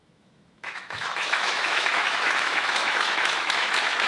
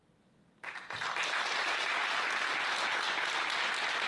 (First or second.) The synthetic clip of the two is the first